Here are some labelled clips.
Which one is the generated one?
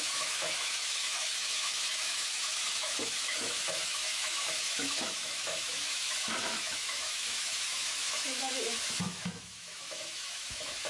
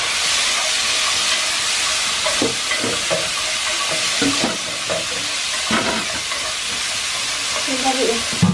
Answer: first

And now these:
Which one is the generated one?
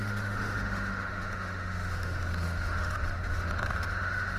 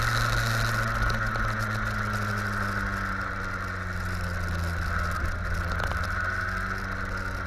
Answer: first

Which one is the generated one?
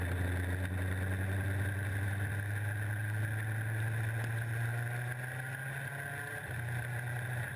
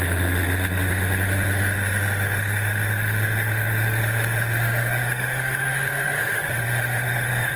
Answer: second